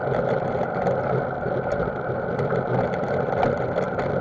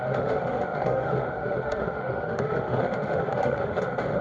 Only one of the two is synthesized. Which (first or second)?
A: second